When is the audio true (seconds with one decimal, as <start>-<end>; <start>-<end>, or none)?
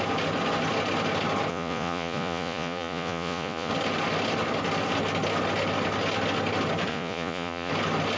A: 0.0-1.5; 3.7-6.9; 7.7-8.2